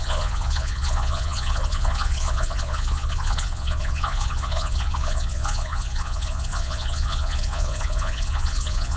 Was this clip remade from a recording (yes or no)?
yes